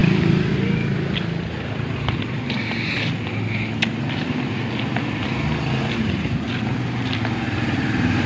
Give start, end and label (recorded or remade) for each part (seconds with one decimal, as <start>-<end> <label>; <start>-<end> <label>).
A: 0.0-8.3 recorded